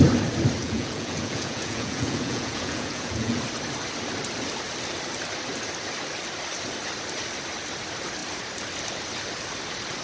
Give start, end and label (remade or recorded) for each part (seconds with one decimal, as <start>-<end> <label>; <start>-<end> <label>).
0.0-0.6 recorded; 0.6-3.4 remade; 3.4-10.0 recorded